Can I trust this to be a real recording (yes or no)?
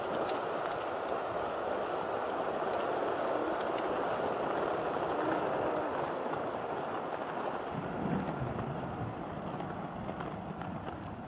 yes